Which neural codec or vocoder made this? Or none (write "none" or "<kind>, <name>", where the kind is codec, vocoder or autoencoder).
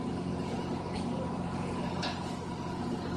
none